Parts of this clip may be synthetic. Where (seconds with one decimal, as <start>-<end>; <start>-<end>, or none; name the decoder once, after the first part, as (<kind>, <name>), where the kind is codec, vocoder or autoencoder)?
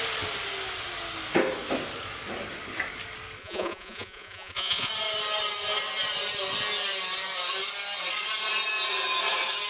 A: 3.4-4.9 (vocoder, Vocos)